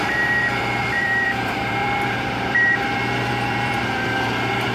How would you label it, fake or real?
fake